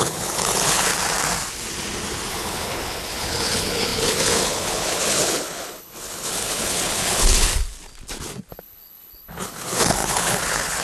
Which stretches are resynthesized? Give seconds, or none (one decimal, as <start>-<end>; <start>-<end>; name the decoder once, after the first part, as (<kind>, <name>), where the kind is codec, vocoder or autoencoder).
0.0-0.9 (codec, HILCodec); 2.3-7.5; 8.5-10.8